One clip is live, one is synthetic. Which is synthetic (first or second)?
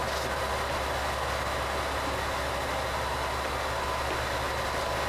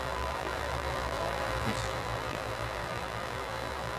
second